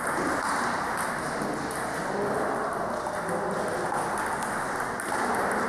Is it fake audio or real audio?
real